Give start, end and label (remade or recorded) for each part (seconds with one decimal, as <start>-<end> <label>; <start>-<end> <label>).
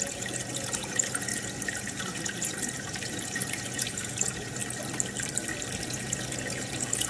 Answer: 0.0-4.6 remade; 4.6-5.8 recorded; 5.8-7.1 remade